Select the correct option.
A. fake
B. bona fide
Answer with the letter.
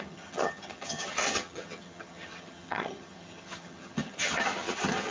A